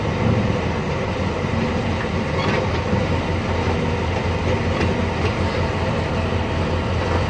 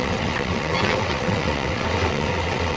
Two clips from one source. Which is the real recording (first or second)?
first